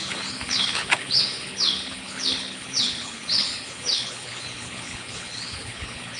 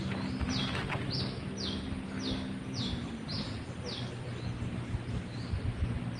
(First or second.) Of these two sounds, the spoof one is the first